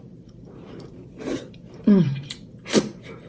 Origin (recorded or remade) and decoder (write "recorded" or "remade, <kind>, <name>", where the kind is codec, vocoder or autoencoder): remade, vocoder, BigVGAN v2